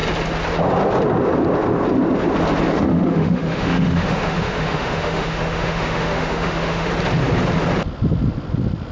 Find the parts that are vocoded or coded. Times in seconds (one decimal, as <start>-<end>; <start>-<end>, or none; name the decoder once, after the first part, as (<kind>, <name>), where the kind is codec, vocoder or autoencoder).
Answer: 2.7-6.9 (autoencoder, DAC-VAE)